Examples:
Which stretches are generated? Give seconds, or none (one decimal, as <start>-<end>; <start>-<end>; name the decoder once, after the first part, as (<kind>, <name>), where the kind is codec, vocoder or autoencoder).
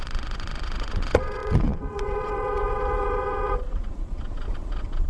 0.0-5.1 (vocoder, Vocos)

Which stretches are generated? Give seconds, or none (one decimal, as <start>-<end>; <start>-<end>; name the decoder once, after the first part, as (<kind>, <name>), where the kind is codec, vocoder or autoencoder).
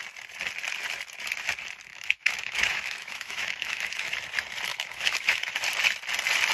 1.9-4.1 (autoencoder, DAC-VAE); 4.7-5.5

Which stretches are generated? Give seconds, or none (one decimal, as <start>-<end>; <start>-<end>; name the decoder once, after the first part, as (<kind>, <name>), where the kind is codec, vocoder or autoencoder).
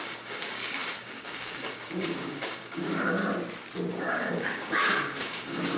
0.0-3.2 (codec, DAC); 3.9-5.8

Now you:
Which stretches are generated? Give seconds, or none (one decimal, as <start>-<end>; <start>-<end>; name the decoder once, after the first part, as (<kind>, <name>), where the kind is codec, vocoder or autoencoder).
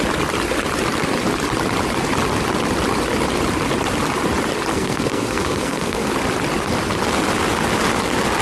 4.7-6.1 (codec, SNAC)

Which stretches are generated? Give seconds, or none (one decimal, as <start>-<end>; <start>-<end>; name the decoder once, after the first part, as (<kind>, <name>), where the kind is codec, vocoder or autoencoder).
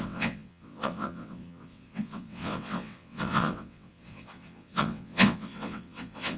0.0-6.4 (vocoder, WaveNeXt)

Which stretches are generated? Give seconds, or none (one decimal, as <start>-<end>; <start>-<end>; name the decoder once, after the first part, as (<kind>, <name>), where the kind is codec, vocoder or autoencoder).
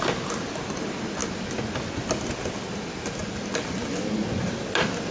none